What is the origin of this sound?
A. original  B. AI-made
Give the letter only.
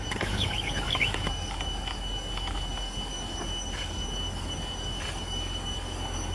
B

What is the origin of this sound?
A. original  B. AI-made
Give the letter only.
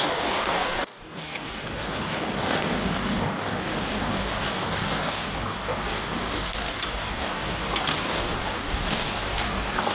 B